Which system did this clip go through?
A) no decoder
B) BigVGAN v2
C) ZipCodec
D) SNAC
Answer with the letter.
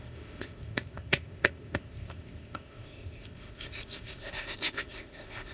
C